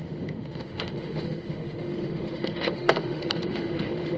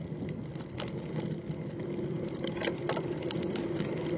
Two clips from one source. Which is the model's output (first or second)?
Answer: first